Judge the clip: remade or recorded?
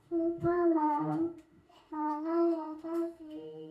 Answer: remade